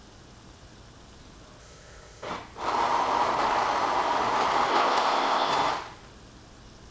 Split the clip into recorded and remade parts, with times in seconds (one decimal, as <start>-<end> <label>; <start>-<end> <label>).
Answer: 0.0-1.6 recorded; 1.6-2.3 remade; 2.3-4.7 recorded; 4.7-5.5 remade; 5.5-6.9 recorded